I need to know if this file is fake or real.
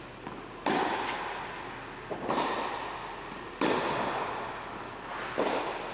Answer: real